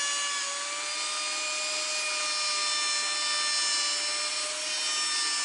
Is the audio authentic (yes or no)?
yes